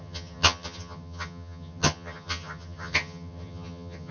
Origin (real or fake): fake